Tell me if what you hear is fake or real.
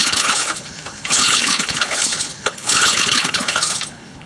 fake